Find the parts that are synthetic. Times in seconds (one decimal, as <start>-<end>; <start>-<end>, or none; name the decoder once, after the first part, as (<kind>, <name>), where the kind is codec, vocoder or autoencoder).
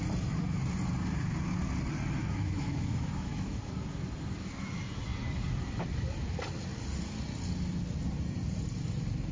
2.2-3.7 (autoencoder, DAC-VAE)